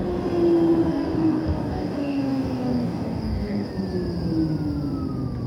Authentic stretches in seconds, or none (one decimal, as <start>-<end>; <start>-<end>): 0.0-0.9; 3.7-5.5